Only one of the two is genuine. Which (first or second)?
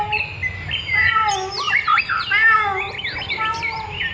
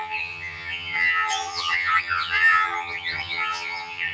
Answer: first